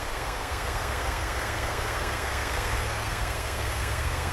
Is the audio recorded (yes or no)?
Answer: no